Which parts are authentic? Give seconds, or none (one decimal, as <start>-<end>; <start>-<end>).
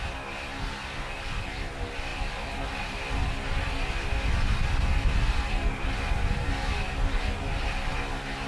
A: 0.0-8.5